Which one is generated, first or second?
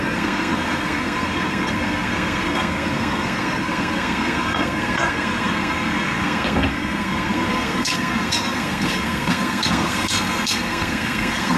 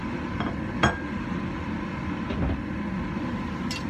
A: first